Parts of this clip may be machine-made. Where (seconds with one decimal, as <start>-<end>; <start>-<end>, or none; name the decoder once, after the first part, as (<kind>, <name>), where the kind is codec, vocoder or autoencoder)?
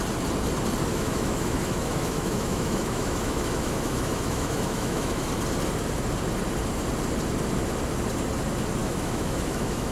0.9-5.3 (autoencoder, DAC-VAE); 8.8-9.9